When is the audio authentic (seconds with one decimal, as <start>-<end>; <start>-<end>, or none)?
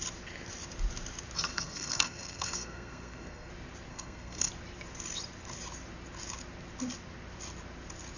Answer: 0.0-1.5; 3.5-3.9; 4.5-8.2